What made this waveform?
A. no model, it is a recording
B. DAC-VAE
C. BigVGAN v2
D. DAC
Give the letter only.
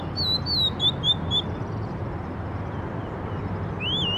A